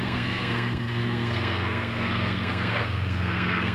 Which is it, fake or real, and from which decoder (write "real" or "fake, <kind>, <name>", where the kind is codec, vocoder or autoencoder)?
fake, codec, SNAC